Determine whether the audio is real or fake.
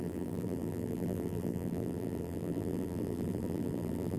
fake